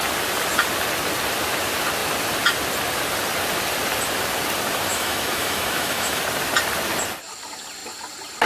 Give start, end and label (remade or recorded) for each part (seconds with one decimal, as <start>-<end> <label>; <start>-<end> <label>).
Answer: 0.0-4.9 recorded; 4.9-6.2 remade; 6.2-8.5 recorded